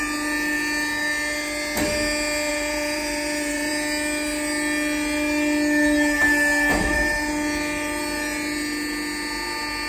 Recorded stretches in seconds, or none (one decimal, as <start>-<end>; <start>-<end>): 0.0-2.5; 3.7-9.9